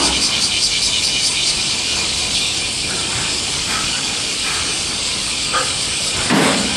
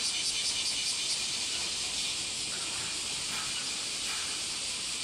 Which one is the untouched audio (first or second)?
second